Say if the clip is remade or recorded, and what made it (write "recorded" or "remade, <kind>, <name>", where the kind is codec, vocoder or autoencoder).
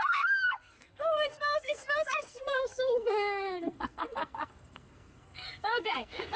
remade, codec, SNAC